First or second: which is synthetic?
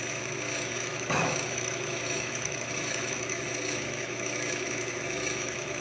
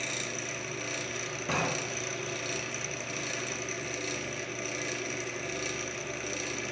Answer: first